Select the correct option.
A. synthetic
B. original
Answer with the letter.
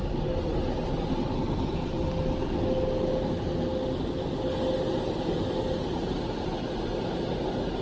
B